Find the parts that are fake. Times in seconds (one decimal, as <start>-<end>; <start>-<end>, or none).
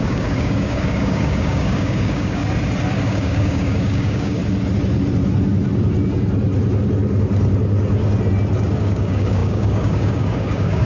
0.0-2.4; 3.0-4.4; 8.8-10.8